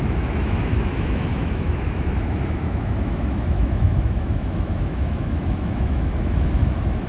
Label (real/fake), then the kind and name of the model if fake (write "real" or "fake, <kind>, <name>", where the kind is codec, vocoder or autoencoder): fake, autoencoder, DAC-VAE